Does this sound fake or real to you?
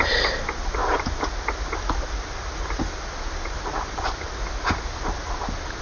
real